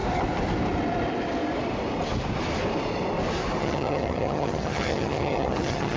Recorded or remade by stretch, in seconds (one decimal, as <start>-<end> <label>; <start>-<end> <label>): 0.0-3.6 recorded; 3.6-6.0 remade